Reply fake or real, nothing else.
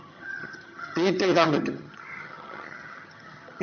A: fake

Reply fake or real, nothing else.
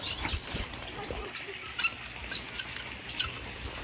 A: real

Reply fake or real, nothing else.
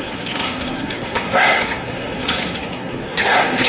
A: fake